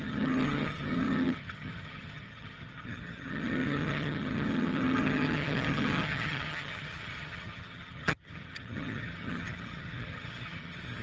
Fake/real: fake